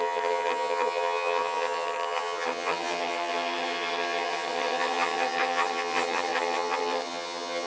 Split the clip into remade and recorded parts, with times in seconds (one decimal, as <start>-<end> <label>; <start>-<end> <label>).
0.0-7.7 remade